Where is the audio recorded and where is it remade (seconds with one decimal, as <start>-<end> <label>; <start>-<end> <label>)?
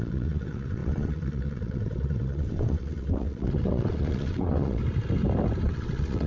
0.0-4.8 remade; 4.8-5.6 recorded; 5.6-6.3 remade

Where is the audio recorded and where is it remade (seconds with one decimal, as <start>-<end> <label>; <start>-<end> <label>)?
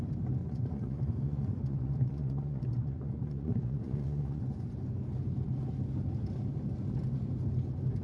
0.0-0.4 recorded; 0.4-4.8 remade; 4.8-8.0 recorded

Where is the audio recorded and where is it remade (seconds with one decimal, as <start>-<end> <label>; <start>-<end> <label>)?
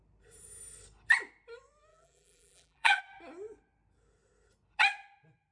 0.0-1.9 recorded; 1.9-3.0 remade; 3.0-5.5 recorded